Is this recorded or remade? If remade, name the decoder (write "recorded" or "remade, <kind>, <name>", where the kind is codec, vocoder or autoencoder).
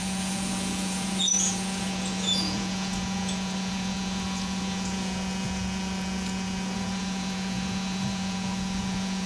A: remade, vocoder, Vocos